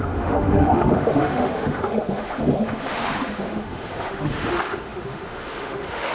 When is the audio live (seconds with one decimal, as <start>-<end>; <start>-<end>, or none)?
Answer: none